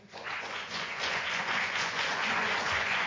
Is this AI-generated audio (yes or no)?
yes